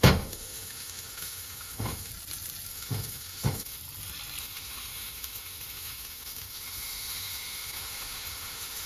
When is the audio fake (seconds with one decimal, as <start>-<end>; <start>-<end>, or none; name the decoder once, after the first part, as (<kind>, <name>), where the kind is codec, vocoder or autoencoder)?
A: 0.0-2.1 (autoencoder, DAC-VAE); 2.7-3.8; 4.4-8.9

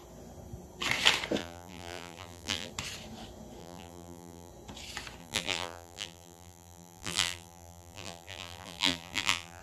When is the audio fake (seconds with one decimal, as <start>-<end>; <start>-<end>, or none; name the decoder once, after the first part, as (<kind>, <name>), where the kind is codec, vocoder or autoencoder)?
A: 1.4-2.7 (vocoder, BigVGAN v2); 3.6-4.5; 5.2-9.6

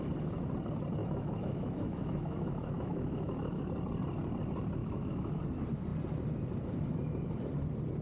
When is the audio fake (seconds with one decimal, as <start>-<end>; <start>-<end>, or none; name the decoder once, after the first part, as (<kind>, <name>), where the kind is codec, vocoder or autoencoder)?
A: 1.0-3.6 (autoencoder, DAC-VAE); 4.8-5.4

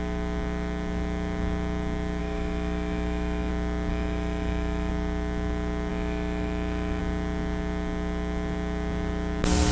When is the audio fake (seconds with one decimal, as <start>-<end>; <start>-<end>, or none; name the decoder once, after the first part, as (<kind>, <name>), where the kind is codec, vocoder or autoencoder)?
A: 2.2-3.5 (autoencoder, DAC-VAE); 3.9-4.9; 5.9-7.0

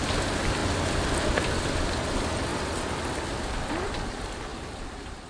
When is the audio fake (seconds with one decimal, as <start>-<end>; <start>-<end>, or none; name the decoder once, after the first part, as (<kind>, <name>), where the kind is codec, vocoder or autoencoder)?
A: none